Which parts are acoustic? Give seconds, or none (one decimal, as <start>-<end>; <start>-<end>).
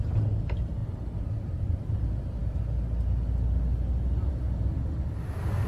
0.0-0.8; 1.9-5.7